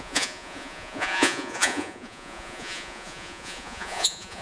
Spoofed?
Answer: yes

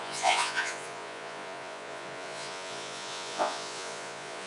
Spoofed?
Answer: yes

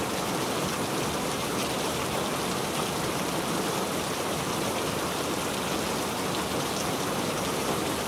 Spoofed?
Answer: yes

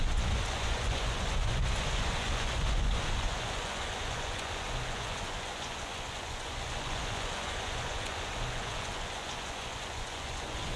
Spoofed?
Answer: yes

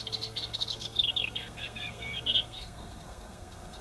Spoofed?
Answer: yes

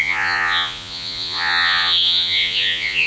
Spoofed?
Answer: yes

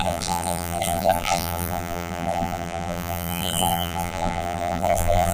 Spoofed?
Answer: yes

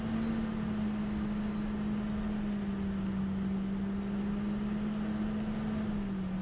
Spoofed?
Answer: no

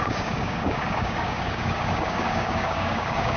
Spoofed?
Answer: yes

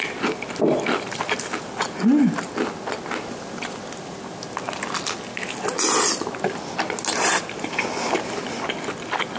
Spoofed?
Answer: no